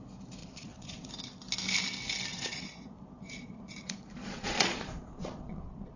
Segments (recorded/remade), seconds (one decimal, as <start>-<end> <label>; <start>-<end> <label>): 0.0-0.4 recorded; 0.4-1.1 remade; 1.1-2.3 recorded; 2.3-6.0 remade